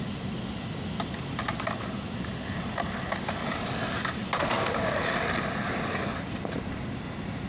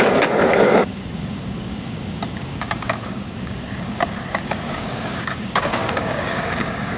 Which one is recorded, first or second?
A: first